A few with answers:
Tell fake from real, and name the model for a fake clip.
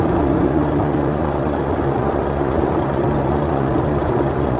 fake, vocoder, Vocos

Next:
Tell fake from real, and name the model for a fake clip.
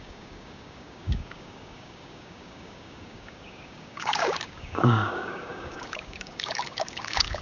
fake, codec, DAC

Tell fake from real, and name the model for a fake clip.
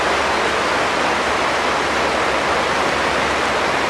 real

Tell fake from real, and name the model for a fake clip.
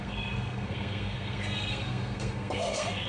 fake, codec, SNAC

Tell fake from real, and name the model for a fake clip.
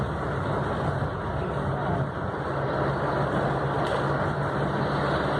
real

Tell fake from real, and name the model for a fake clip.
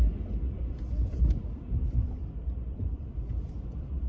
real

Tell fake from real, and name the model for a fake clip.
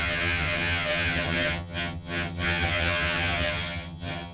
fake, vocoder, HiFi-GAN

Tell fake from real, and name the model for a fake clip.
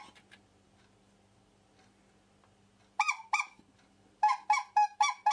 real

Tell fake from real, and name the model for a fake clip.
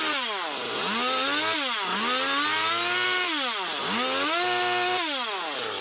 real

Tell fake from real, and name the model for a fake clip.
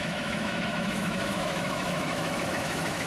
fake, autoencoder, DAC-VAE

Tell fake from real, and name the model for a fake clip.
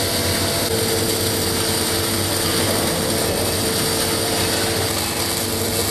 real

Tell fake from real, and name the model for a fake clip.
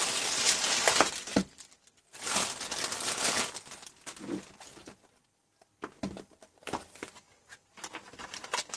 real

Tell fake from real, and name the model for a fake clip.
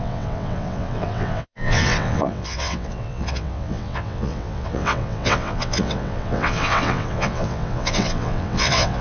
fake, vocoder, WaveNeXt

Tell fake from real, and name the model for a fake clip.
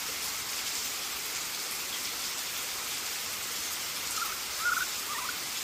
real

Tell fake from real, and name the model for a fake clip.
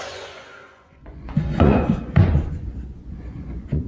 fake, vocoder, Vocos